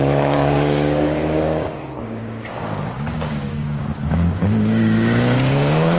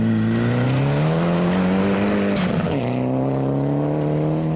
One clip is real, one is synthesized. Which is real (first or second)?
second